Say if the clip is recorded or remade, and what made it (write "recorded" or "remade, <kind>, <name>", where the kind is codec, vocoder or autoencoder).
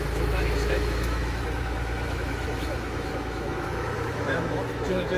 remade, autoencoder, DAC-VAE